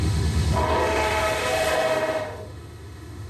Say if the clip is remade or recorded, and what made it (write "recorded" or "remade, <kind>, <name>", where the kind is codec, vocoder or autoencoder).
remade, autoencoder, DAC-VAE